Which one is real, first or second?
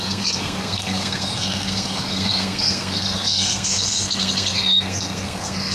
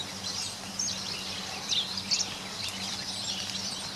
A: second